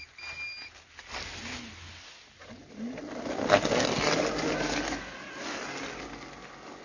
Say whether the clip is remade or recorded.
recorded